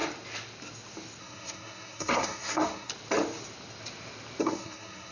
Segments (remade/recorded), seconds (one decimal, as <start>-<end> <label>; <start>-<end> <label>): 0.0-1.2 recorded; 1.2-2.9 remade; 2.9-4.4 recorded; 4.4-5.1 remade